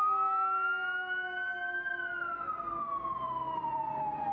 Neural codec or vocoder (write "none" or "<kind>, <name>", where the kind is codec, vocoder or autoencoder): none